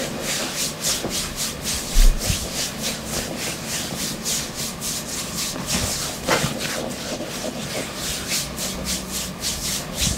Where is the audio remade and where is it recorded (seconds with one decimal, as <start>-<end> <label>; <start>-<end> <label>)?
0.0-10.2 recorded